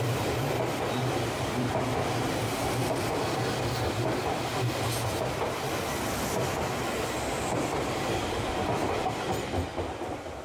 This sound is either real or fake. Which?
real